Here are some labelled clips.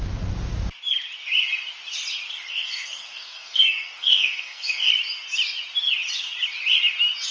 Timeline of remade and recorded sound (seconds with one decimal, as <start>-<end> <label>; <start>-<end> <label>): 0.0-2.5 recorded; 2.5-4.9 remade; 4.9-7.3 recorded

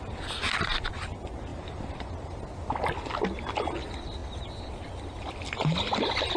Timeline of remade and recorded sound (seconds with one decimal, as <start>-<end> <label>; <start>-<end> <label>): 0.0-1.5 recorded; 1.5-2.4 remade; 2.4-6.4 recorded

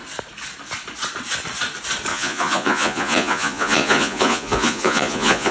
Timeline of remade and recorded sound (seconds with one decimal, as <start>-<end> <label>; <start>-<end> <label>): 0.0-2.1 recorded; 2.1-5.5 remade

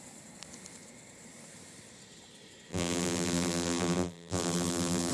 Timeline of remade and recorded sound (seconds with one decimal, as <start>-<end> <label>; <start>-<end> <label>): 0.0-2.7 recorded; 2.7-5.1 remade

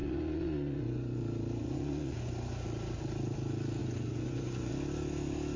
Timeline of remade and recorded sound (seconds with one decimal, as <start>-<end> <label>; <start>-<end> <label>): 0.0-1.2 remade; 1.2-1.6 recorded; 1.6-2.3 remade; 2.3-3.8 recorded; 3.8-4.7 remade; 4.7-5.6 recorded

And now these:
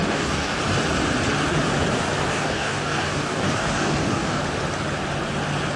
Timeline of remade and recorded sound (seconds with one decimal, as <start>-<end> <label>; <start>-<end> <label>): 0.0-0.6 remade; 0.6-2.3 recorded; 2.3-4.4 remade; 4.4-5.8 recorded